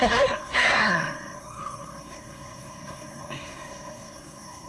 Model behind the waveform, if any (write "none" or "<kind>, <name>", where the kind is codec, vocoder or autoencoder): codec, SNAC